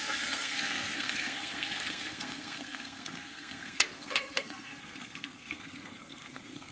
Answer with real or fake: fake